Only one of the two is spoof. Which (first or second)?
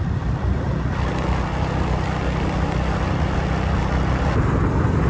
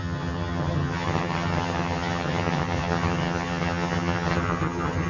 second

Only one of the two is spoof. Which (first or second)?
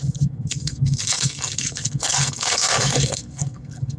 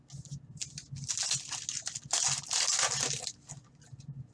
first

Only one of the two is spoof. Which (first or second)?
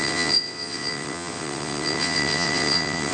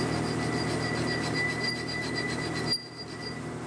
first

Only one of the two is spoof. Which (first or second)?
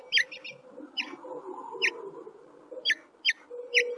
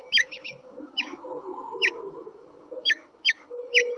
second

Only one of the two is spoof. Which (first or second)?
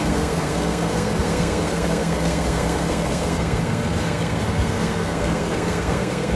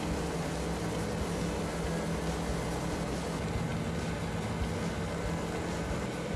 first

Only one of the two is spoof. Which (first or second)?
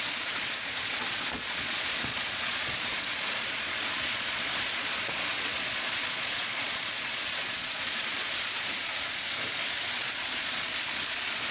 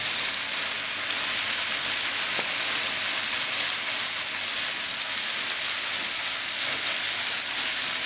first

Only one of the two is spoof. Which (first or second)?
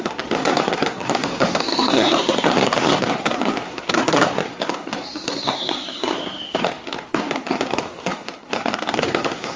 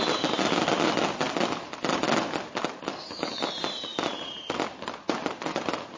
first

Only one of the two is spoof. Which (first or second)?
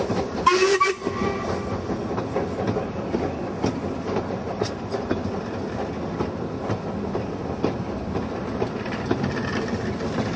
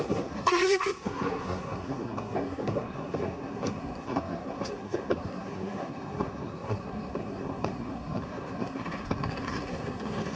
second